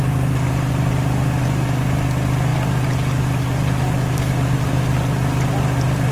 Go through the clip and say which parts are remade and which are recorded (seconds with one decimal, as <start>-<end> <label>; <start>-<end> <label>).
0.0-6.1 recorded